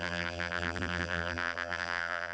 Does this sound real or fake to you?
fake